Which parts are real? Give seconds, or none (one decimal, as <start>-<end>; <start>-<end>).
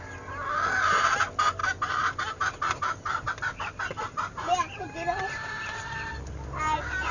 0.0-1.6; 3.3-7.1